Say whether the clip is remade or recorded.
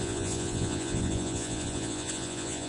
remade